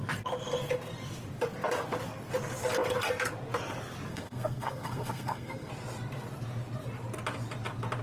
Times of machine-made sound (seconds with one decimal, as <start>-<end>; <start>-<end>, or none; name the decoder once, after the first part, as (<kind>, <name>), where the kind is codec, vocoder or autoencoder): 4.1-5.7 (codec, SNAC)